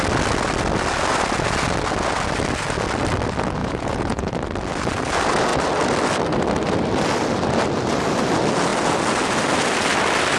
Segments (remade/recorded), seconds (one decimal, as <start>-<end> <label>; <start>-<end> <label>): 0.0-3.6 recorded; 3.6-4.3 remade; 4.3-10.4 recorded